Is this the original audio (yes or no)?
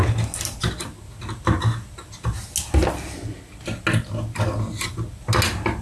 yes